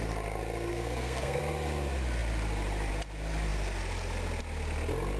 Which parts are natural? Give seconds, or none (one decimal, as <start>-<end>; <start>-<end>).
0.0-0.7; 1.4-5.2